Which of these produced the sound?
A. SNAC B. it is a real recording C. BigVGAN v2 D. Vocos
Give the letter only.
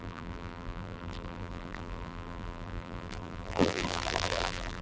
C